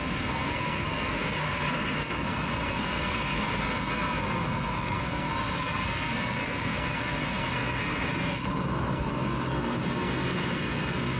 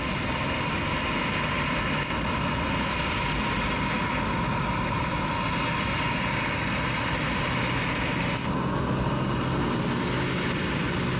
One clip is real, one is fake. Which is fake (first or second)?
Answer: first